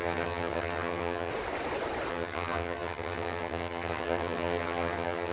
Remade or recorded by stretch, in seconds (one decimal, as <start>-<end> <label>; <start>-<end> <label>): 0.0-1.3 remade; 1.3-2.1 recorded; 2.1-5.3 remade